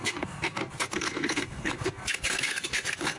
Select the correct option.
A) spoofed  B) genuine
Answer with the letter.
A